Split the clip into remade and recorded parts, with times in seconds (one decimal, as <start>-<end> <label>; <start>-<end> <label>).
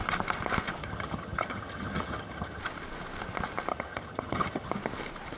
0.0-0.8 recorded; 0.8-2.6 remade; 2.6-3.7 recorded; 3.7-4.7 remade; 4.7-5.4 recorded